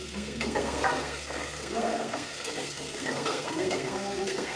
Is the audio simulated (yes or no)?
yes